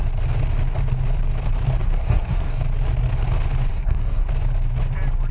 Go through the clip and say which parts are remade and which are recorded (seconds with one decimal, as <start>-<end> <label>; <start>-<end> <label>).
0.0-1.8 recorded; 1.8-2.6 remade; 2.6-3.7 recorded; 3.7-4.3 remade; 4.3-5.3 recorded